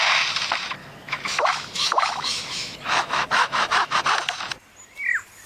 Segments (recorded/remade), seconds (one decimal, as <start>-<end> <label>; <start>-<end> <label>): 0.0-0.8 recorded; 0.8-4.0 remade; 4.0-5.5 recorded